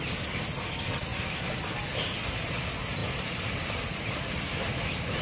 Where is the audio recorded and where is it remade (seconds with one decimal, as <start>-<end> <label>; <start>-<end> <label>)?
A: 0.0-3.0 recorded; 3.0-4.5 remade; 4.5-5.2 recorded